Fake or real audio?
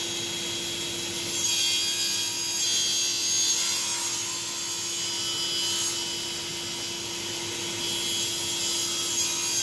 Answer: real